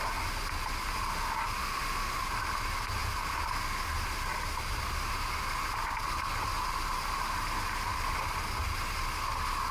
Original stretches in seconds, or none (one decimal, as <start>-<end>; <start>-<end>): 0.0-1.6; 2.2-9.7